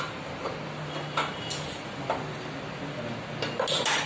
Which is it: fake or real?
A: real